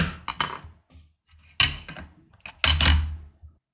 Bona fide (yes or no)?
yes